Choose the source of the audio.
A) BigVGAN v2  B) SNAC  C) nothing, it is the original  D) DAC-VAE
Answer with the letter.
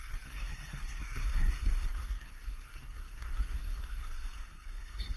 B